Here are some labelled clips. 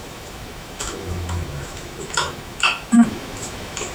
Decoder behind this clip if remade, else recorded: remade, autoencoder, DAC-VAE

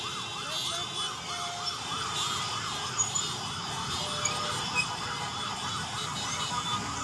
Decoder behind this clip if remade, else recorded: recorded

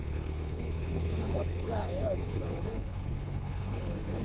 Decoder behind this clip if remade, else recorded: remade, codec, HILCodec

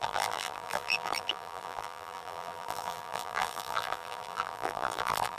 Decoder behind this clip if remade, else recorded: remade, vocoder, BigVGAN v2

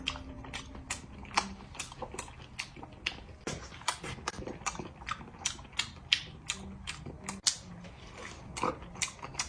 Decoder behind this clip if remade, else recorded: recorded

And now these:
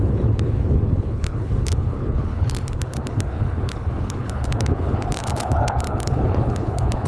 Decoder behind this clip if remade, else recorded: remade, codec, HILCodec